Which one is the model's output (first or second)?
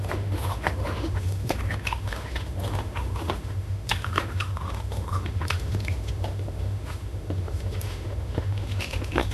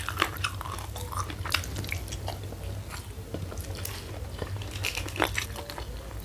first